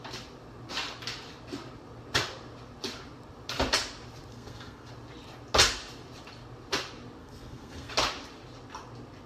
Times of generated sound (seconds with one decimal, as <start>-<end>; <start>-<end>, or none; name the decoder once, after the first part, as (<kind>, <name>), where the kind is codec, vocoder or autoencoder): 4.3-4.9 (codec, SNAC); 7.2-7.9